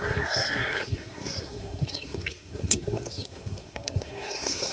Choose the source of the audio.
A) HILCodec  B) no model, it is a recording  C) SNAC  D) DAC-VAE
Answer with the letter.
C